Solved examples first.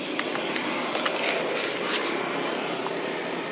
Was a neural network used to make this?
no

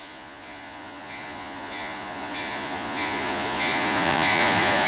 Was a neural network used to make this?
yes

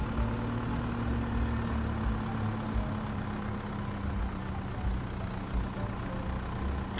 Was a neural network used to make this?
no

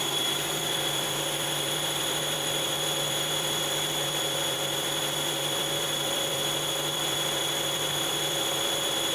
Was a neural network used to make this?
yes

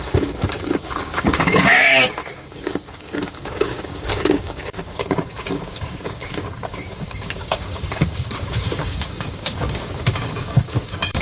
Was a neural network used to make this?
yes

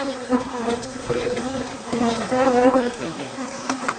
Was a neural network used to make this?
yes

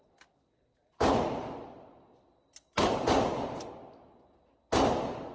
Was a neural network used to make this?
no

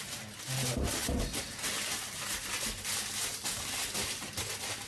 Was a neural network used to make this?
no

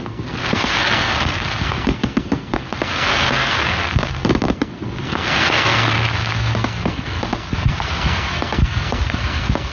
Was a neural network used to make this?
yes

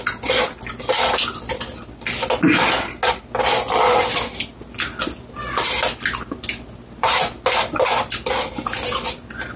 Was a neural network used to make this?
no